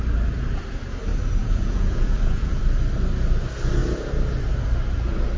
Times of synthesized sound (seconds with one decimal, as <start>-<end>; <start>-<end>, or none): 1.4-2.6

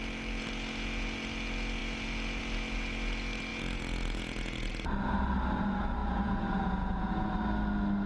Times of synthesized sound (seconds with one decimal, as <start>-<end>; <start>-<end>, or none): 3.5-4.7; 6.0-7.3

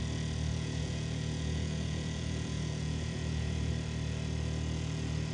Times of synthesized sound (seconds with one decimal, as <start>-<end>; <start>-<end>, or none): 0.5-3.7

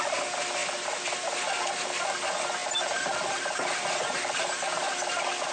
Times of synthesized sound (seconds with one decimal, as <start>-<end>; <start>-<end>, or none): none

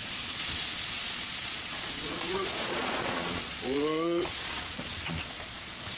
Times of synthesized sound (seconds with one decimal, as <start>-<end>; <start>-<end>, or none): 0.0-6.0

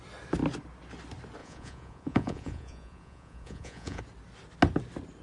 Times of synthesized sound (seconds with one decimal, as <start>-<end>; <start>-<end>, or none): 1.4-4.0

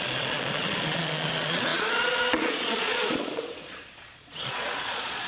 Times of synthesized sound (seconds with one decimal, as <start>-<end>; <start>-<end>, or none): 0.0-5.3

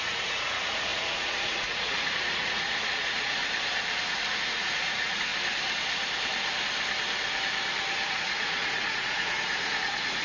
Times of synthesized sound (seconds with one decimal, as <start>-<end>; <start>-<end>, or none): 0.0-3.4; 4.1-5.3; 8.1-10.2